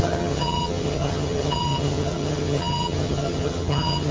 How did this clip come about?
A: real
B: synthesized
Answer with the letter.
B